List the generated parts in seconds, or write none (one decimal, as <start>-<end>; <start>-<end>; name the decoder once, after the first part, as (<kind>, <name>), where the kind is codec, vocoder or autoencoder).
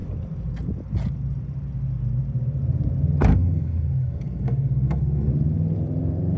3.3-5.3 (codec, SNAC)